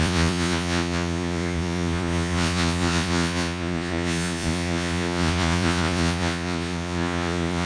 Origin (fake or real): fake